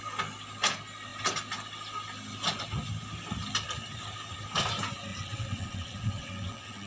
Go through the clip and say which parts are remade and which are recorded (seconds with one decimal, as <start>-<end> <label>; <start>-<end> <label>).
0.0-5.1 recorded; 5.1-6.9 remade